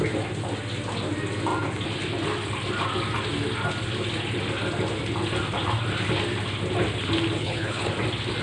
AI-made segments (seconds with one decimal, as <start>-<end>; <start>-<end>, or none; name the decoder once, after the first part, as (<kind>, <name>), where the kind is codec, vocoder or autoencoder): 7.4-7.9 (codec, HILCodec)